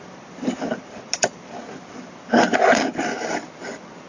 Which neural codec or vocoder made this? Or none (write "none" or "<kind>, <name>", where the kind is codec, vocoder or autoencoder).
none